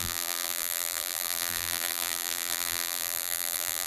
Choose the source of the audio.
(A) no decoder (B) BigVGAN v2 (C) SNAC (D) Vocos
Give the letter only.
B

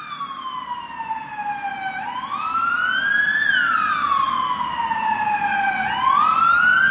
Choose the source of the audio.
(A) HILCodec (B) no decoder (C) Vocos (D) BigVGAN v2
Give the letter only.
B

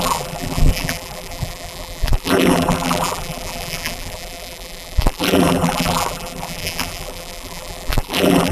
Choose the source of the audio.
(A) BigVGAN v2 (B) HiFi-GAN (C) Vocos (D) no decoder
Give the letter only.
A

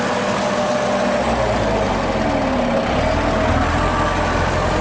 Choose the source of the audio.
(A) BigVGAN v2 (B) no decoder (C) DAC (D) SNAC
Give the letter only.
B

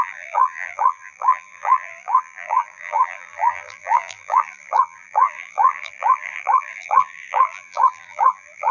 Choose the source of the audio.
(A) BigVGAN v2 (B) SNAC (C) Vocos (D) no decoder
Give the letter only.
A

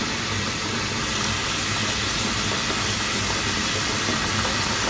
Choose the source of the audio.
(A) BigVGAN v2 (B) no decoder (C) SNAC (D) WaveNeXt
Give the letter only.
B